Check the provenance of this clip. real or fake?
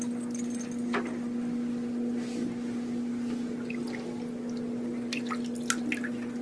real